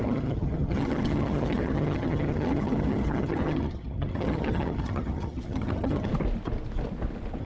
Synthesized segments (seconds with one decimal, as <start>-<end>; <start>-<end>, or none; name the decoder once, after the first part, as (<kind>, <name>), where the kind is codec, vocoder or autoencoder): 0.0-6.1 (vocoder, HiFi-GAN)